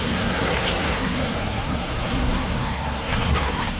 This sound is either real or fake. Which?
fake